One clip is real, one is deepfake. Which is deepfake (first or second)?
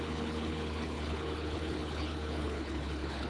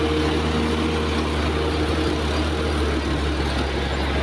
first